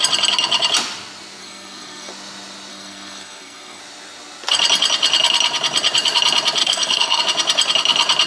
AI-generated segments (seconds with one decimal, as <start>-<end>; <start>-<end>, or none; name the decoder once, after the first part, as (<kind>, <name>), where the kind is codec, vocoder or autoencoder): 1.4-2.1 (codec, SNAC); 2.7-3.8; 6.6-7.2